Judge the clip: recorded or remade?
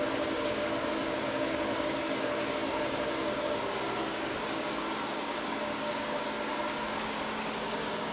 remade